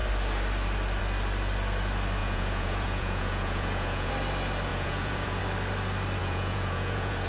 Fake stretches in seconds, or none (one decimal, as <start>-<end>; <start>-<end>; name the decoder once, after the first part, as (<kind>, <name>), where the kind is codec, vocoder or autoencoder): 2.2-4.1 (vocoder, Vocos); 4.7-5.4; 6.2-7.3